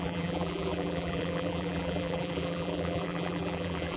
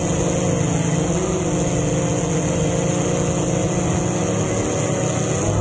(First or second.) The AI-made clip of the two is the first